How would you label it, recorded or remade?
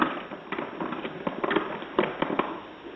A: recorded